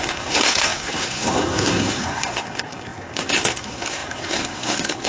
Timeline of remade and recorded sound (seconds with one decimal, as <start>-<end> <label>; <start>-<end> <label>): 0.0-5.1 remade